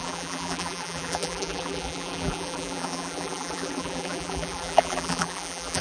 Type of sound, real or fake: fake